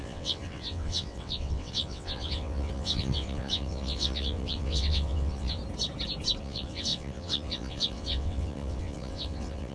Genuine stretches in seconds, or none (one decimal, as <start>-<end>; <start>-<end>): 5.6-6.4